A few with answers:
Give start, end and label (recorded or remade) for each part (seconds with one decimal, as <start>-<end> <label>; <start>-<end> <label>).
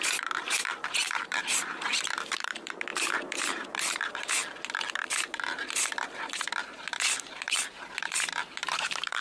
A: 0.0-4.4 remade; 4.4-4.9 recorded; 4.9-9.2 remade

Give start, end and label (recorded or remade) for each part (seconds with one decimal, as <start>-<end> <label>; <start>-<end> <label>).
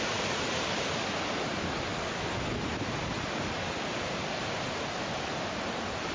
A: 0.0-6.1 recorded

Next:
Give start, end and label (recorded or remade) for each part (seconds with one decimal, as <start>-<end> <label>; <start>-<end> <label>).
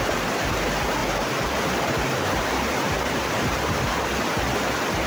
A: 0.0-1.0 recorded; 1.0-4.1 remade; 4.1-5.1 recorded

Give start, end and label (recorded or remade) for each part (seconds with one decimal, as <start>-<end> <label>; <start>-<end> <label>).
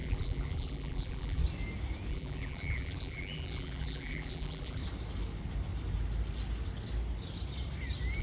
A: 0.0-1.4 remade; 1.4-2.1 recorded; 2.1-4.8 remade; 4.8-8.2 recorded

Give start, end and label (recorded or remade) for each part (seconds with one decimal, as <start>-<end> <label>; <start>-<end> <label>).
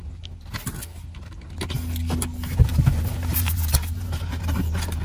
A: 0.0-2.7 recorded; 2.7-5.0 remade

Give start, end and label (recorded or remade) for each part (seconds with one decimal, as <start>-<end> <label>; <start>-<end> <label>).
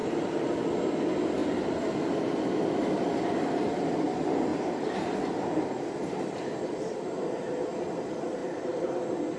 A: 0.0-0.7 remade; 0.7-4.5 recorded; 4.5-5.3 remade; 5.3-8.4 recorded; 8.4-9.0 remade; 9.0-9.4 recorded